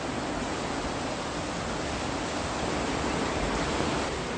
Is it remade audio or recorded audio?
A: recorded